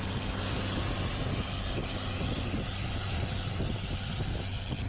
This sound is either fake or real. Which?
real